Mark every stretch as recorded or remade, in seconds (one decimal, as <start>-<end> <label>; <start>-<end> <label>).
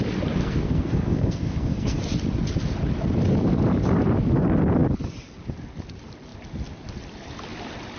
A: 0.0-0.4 recorded; 0.4-2.0 remade; 2.0-8.0 recorded